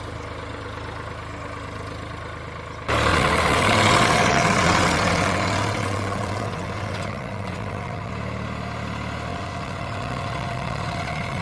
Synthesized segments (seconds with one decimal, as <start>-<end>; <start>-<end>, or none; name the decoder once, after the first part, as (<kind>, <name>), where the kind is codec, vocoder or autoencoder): 3.1-8.1 (vocoder, WaveNeXt); 9.3-11.4